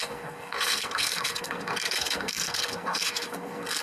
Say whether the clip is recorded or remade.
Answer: remade